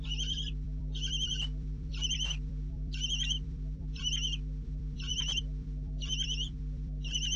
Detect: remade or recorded remade